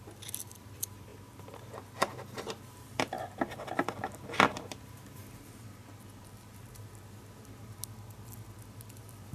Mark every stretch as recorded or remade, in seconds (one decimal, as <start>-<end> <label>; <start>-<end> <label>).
0.0-1.1 remade; 1.1-2.8 recorded; 2.8-5.2 remade; 5.2-9.3 recorded